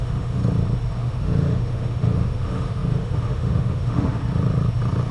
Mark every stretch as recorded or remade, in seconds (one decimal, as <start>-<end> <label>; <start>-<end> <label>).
0.0-0.4 remade; 0.4-1.0 recorded; 1.0-4.2 remade; 4.2-5.1 recorded

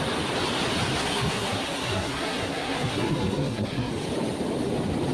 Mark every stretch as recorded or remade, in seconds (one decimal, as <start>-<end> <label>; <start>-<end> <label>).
0.0-1.0 recorded; 1.0-3.9 remade; 3.9-5.1 recorded

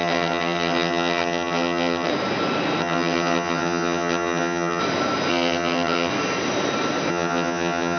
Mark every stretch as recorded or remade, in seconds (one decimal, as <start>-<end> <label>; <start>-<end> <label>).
0.0-2.1 remade; 2.1-2.8 recorded; 2.8-4.8 remade; 4.8-5.3 recorded; 5.3-6.1 remade; 6.1-7.1 recorded; 7.1-8.0 remade

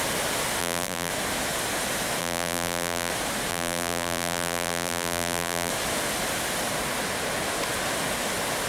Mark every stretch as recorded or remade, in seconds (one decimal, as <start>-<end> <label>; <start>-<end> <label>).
0.0-0.6 recorded; 0.6-1.1 remade; 1.1-2.2 recorded; 2.2-3.1 remade; 3.1-3.5 recorded; 3.5-5.7 remade; 5.7-8.7 recorded

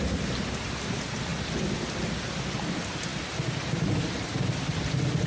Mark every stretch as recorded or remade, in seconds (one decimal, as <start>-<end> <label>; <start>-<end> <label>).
0.0-5.3 recorded

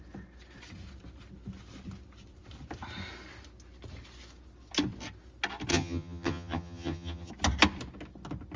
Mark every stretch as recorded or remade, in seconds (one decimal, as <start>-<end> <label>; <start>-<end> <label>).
0.0-5.7 recorded; 5.7-7.3 remade; 7.3-8.6 recorded